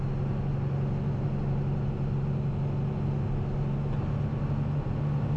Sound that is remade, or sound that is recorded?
recorded